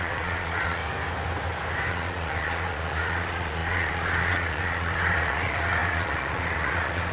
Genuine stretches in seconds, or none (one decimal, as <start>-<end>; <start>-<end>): 0.8-1.9